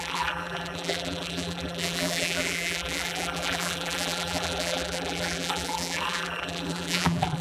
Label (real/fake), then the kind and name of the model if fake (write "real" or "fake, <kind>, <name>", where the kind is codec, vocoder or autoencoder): fake, vocoder, BigVGAN v2